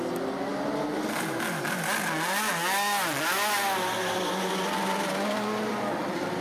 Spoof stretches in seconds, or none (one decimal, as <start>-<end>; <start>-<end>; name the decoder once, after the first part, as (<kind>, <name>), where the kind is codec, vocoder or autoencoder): none